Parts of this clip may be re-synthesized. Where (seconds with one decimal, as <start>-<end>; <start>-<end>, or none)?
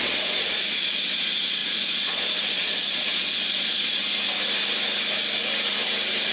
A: 0.0-4.0